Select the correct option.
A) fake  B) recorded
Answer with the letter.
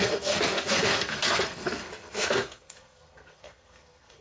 A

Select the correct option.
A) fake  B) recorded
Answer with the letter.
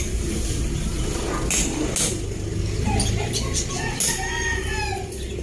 B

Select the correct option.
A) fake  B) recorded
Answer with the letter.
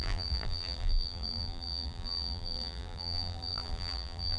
A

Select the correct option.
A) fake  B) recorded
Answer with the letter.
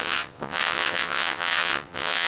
A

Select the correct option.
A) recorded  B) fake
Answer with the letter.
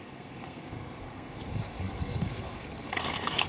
B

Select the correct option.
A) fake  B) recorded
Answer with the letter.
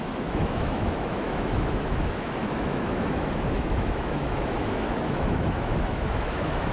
A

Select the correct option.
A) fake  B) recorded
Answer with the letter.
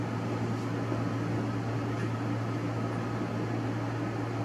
B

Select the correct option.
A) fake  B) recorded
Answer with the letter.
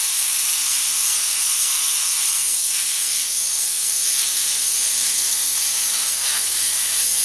A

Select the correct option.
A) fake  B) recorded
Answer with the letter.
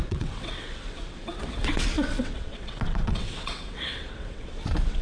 A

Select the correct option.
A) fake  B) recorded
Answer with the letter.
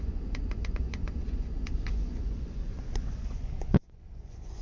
A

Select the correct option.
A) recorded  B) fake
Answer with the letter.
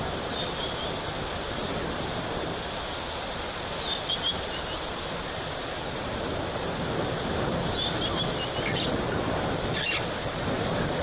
A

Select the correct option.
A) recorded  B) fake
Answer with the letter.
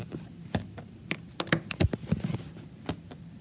A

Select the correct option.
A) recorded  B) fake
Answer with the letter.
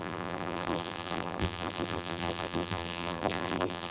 B